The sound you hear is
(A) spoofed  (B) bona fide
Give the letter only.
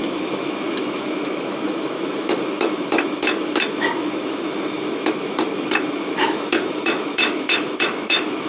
A